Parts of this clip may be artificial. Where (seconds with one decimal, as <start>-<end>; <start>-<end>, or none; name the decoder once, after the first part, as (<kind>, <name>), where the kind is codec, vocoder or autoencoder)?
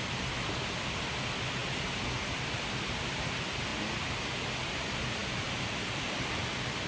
1.6-3.3 (vocoder, BigVGAN v2); 5.2-6.3